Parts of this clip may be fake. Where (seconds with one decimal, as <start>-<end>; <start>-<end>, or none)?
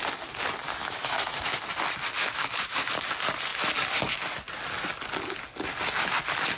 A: 0.8-1.6; 2.2-2.9